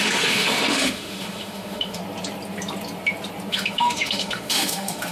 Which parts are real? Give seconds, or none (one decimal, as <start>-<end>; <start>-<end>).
2.0-3.5